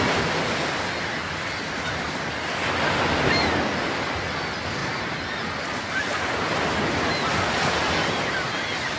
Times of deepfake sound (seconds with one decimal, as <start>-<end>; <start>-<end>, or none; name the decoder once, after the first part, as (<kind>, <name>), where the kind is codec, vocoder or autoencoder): none